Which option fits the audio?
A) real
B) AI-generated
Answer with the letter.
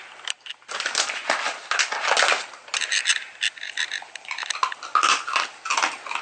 A